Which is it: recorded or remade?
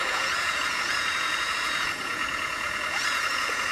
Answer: remade